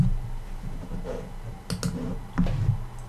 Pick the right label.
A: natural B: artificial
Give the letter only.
A